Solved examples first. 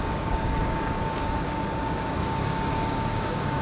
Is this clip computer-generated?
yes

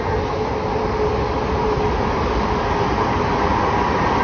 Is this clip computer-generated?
no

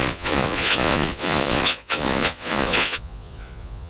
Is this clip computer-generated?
yes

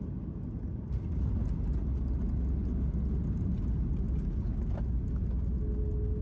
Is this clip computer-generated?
no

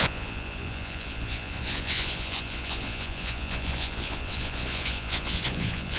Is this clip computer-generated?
yes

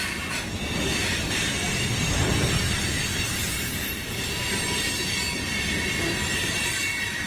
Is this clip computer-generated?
no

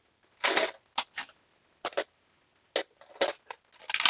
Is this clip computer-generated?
no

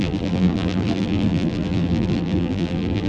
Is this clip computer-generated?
yes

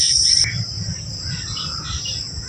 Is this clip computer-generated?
no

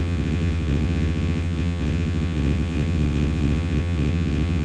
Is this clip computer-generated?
yes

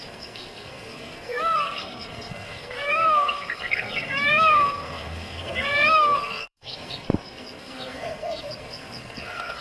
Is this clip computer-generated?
yes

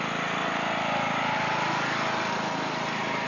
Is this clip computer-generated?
no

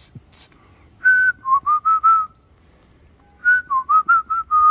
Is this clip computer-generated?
no